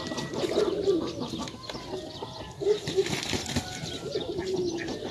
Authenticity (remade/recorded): recorded